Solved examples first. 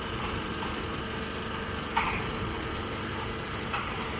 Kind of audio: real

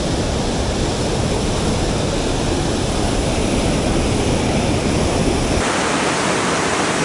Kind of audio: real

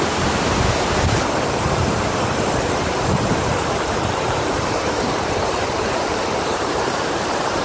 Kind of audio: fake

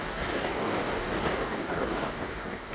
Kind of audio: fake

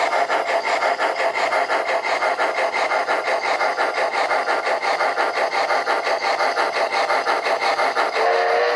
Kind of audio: real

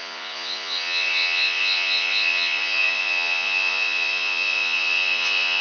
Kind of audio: fake